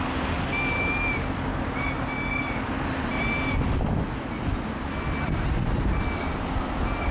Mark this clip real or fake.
real